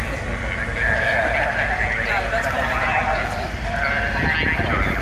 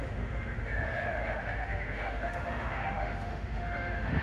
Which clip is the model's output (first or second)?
second